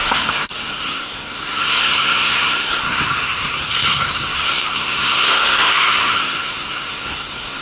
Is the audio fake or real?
fake